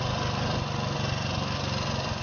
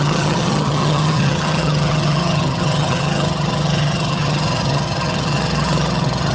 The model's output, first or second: second